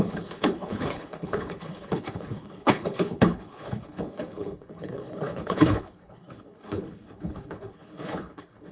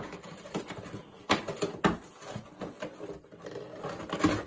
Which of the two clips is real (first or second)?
second